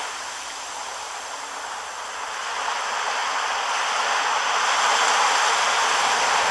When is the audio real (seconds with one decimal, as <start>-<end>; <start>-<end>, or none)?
0.0-6.5